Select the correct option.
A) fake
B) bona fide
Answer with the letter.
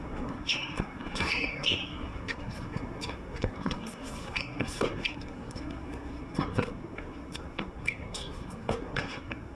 A